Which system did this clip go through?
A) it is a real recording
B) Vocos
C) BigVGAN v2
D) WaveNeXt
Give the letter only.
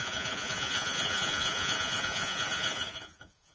B